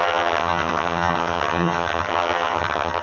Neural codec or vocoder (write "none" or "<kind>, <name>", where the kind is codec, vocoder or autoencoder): vocoder, HiFi-GAN